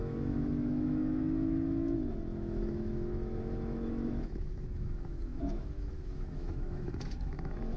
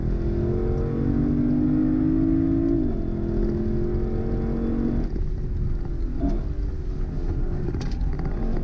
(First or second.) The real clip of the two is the second